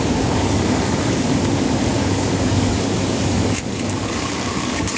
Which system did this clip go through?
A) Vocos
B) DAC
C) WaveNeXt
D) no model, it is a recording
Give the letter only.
B